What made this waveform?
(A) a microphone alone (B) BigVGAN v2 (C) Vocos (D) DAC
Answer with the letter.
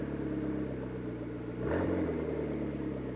A